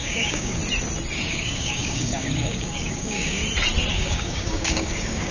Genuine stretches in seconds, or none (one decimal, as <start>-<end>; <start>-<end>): 0.6-1.3; 3.4-3.9